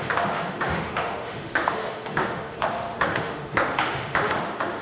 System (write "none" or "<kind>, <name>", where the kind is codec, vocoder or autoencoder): autoencoder, DAC-VAE